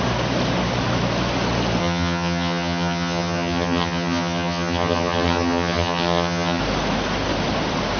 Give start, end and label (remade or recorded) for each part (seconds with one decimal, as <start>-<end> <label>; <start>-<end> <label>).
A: 0.0-1.8 recorded; 1.8-6.6 remade; 6.6-8.0 recorded